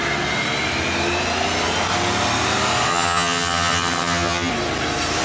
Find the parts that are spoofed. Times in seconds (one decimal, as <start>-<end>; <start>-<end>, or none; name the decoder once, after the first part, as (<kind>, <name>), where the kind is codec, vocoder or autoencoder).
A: 2.9-4.5 (vocoder, HiFi-GAN)